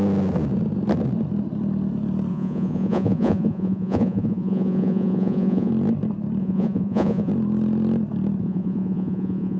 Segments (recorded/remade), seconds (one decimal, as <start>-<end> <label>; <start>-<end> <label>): 0.0-2.3 recorded; 2.3-5.7 remade; 5.7-6.4 recorded; 6.4-7.3 remade; 7.3-8.4 recorded; 8.4-9.6 remade